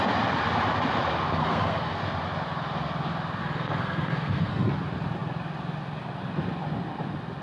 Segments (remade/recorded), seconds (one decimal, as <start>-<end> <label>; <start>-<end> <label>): 0.0-1.4 recorded; 1.4-2.0 remade; 2.0-3.4 recorded; 3.4-4.7 remade; 4.7-7.4 recorded